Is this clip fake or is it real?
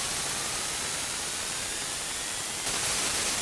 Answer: real